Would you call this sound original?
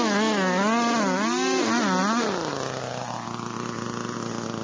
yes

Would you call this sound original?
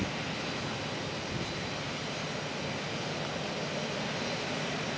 yes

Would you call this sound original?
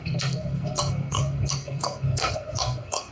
no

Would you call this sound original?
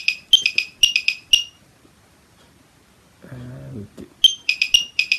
yes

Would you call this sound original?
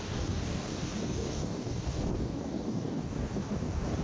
no